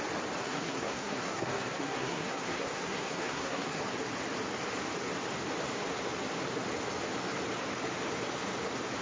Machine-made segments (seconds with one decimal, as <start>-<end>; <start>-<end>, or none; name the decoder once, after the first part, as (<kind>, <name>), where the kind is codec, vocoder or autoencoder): 0.4-3.8 (codec, SNAC)